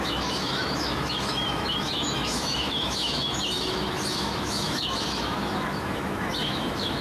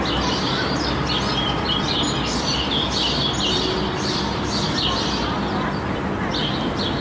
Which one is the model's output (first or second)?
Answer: first